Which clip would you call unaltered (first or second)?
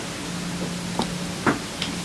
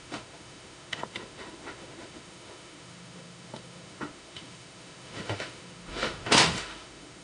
first